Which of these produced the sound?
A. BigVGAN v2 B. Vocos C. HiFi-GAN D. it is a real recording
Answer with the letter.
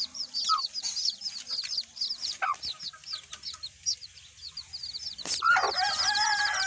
D